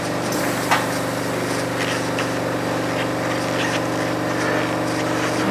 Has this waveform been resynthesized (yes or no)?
no